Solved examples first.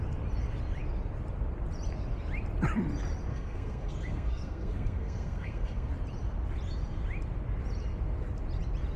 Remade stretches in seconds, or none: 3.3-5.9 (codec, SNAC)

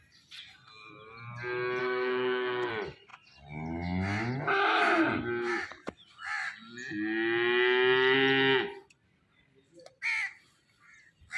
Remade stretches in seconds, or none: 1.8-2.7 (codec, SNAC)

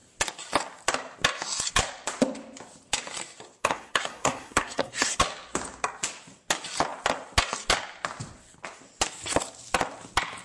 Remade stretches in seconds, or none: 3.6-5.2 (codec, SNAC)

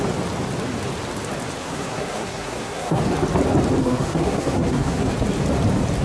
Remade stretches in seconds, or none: 1.6-3.0 (codec, SNAC); 3.8-5.1